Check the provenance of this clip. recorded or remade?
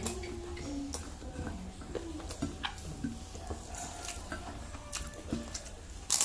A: recorded